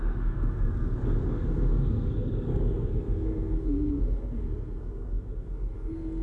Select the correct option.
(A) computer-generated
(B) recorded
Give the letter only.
A